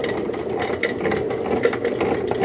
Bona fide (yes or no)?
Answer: yes